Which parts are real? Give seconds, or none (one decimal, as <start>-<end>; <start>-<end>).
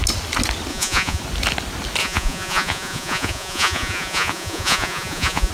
0.0-0.7; 1.2-2.0